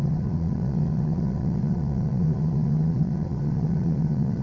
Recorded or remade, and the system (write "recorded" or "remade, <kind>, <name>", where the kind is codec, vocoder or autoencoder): remade, vocoder, Vocos